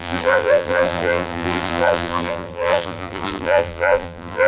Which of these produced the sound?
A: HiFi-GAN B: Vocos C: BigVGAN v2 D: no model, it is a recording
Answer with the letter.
C